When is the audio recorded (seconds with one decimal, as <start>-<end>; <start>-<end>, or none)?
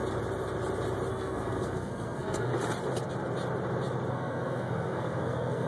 0.0-1.1; 2.5-4.1